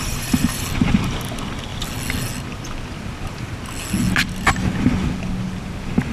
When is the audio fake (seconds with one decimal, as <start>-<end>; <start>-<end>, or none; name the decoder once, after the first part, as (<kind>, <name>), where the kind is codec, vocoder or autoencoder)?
none